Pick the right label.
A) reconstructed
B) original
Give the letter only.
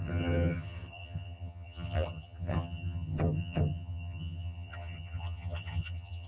A